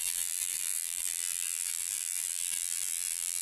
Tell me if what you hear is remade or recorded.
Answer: remade